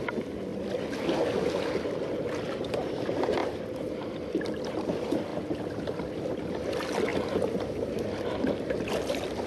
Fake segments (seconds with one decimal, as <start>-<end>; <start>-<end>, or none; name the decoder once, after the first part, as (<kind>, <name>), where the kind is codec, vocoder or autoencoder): 0.0-0.5 (vocoder, BigVGAN v2); 2.9-7.1; 8.7-9.5